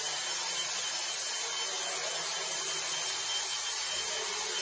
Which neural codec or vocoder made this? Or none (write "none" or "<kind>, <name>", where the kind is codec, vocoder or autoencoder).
none